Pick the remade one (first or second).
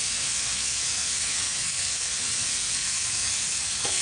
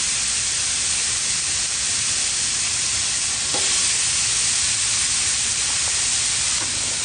first